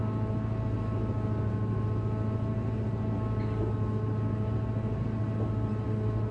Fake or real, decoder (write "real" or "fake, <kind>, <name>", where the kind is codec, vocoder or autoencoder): real